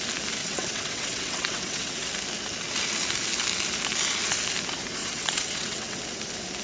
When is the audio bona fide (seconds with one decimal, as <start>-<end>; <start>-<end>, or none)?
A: 0.0-0.4; 2.1-5.0; 6.0-6.6